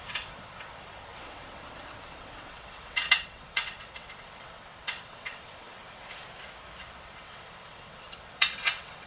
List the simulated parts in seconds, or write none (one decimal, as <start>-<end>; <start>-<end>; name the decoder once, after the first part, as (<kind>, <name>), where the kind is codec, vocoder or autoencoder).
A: 0.0-5.8 (vocoder, WaveNeXt); 6.8-9.1